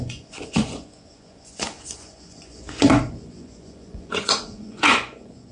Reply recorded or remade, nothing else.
remade